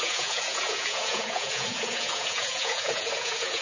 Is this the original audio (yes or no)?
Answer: no